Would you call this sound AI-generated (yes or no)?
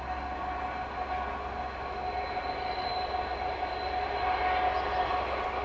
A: no